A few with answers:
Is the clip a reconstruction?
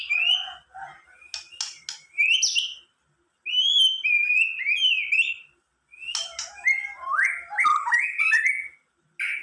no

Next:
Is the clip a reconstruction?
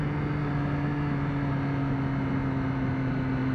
no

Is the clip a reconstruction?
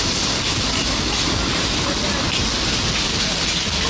no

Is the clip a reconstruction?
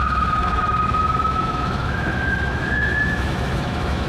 yes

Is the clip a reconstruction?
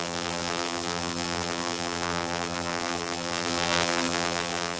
yes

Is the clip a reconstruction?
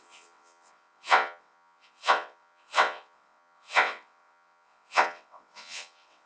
yes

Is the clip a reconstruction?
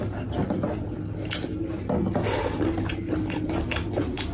no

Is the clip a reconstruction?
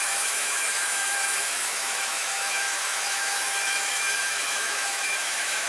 yes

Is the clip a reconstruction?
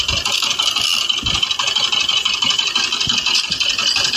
no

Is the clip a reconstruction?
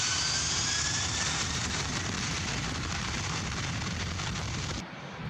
yes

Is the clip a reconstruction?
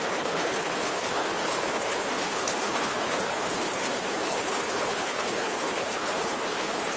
yes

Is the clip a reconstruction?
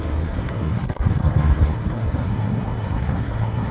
yes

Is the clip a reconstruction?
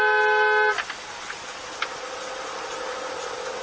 no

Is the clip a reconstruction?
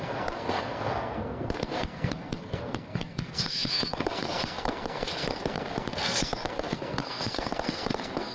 yes